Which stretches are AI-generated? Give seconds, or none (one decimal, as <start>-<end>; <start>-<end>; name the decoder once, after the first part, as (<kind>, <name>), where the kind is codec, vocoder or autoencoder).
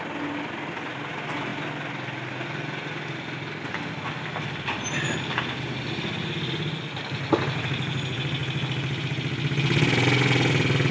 none